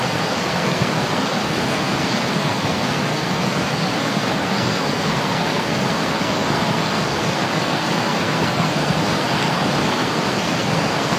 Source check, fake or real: fake